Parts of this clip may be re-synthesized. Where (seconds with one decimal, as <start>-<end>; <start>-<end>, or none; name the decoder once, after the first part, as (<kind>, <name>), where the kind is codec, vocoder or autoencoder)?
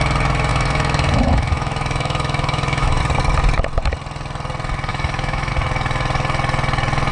0.5-3.0 (autoencoder, DAC-VAE); 4.9-5.5